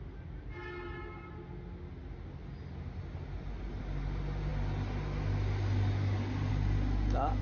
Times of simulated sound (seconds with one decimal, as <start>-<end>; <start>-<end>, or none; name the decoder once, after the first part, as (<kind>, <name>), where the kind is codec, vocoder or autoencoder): none